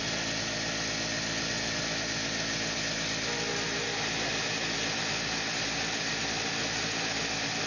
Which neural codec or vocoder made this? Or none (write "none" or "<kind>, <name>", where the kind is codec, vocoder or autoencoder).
none